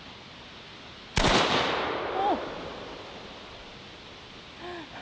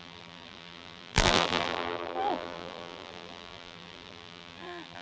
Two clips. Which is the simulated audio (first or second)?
second